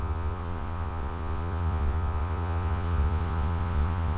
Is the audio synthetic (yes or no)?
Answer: yes